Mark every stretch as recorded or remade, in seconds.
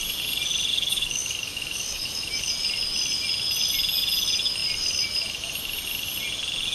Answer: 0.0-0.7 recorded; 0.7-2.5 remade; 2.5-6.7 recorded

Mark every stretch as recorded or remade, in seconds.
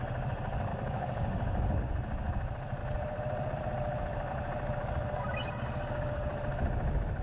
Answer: 0.0-0.7 recorded; 0.7-1.8 remade; 1.8-4.8 recorded; 4.8-6.3 remade; 6.3-7.2 recorded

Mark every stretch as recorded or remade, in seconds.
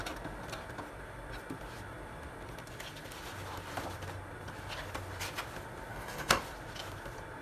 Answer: 0.0-5.9 recorded; 5.9-6.4 remade; 6.4-7.4 recorded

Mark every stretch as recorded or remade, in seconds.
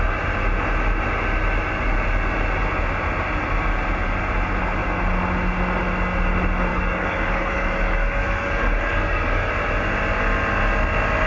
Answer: 0.0-6.7 recorded; 6.7-9.5 remade; 9.5-11.3 recorded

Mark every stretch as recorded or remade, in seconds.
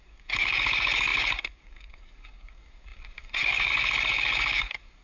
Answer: 0.0-5.0 remade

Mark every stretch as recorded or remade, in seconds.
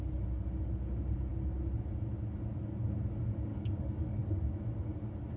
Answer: 0.0-3.5 recorded; 3.5-4.2 remade; 4.2-5.4 recorded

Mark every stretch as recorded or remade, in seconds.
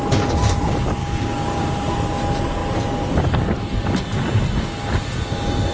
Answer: 0.0-1.0 recorded; 1.0-1.6 remade; 1.6-5.7 recorded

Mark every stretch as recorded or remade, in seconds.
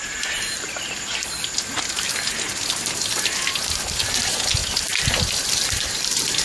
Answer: 0.0-6.4 recorded